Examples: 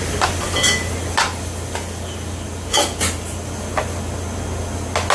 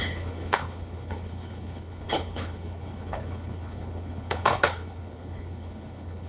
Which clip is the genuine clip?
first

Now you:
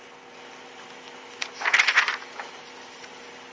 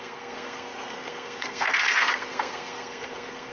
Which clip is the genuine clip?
first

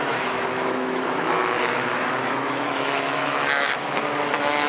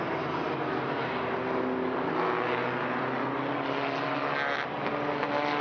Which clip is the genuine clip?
second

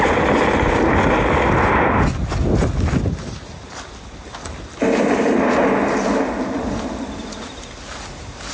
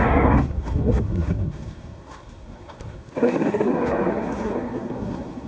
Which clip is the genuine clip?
first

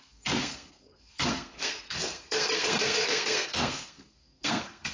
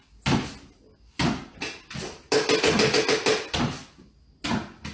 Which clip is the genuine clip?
second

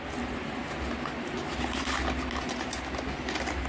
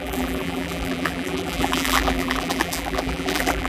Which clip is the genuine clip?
first